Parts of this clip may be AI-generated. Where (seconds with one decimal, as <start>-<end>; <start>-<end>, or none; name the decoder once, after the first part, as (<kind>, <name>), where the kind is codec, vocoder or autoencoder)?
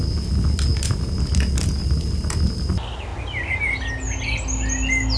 none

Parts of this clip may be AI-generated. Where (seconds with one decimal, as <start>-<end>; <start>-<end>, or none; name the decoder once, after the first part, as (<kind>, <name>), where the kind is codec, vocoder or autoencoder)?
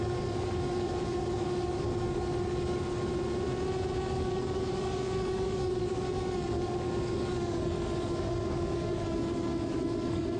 0.0-3.1 (codec, DAC); 4.0-10.4